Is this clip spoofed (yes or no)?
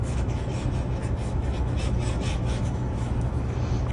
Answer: yes